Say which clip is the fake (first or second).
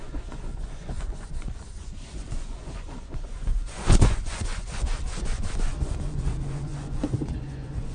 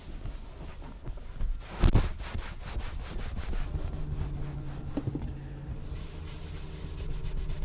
first